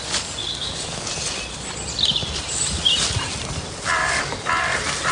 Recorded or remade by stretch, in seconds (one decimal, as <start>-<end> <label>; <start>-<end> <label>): 0.0-0.4 recorded; 0.4-1.1 remade; 1.1-4.0 recorded; 4.0-4.5 remade; 4.5-5.1 recorded